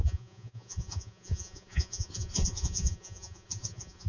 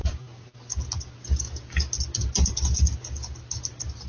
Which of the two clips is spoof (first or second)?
first